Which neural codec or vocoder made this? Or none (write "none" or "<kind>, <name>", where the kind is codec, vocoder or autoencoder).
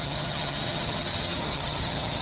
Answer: vocoder, HiFi-GAN